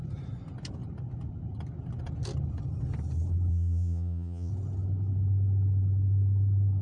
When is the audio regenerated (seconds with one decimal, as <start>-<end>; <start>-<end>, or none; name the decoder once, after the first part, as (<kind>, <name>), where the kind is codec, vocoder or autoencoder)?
3.5-4.5 (vocoder, Vocos)